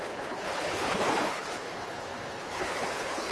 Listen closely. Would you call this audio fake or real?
fake